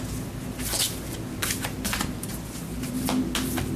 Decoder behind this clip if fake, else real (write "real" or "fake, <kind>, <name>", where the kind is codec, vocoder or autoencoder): real